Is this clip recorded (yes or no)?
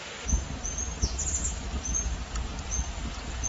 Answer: yes